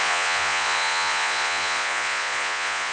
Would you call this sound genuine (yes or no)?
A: no